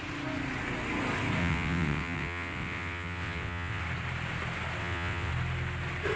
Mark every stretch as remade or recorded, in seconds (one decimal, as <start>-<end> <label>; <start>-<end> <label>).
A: 0.0-1.4 recorded; 1.4-3.8 remade; 3.8-4.8 recorded; 4.8-5.3 remade; 5.3-6.2 recorded